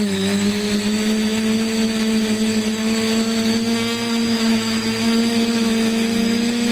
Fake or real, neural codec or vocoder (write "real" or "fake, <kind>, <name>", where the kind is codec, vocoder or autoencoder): fake, autoencoder, DAC-VAE